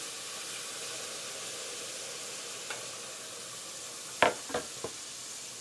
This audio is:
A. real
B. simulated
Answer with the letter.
A